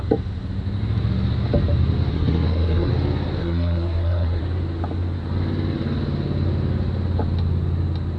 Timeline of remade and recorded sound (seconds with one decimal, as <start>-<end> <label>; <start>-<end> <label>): 0.0-2.1 recorded; 2.1-2.9 remade; 2.9-3.4 recorded; 3.4-4.4 remade; 4.4-8.2 recorded